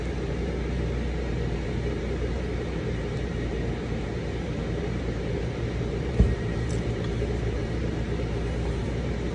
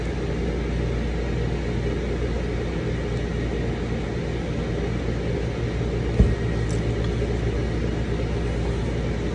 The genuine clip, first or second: second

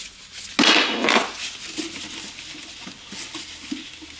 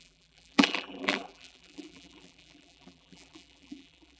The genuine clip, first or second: first